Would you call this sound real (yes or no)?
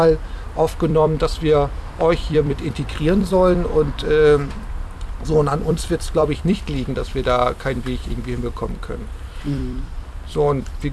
no